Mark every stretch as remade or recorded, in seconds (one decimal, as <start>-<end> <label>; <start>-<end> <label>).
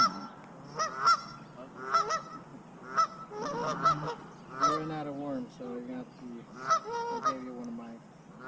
0.0-8.5 recorded